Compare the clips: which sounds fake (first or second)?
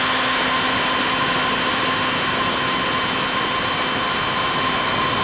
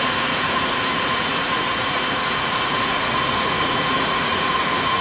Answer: second